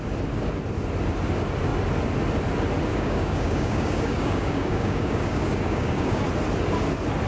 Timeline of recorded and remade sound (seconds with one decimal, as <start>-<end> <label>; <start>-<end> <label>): 0.0-2.9 recorded; 2.9-6.2 remade; 6.2-7.3 recorded